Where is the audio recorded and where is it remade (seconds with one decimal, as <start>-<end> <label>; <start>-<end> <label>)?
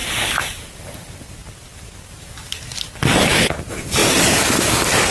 0.0-2.7 remade; 2.7-3.4 recorded; 3.4-4.0 remade; 4.0-5.1 recorded